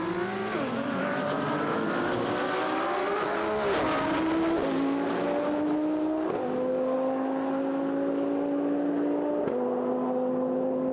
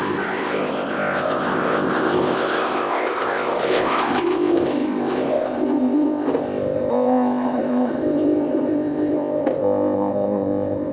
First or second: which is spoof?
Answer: second